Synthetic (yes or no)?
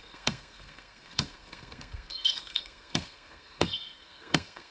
yes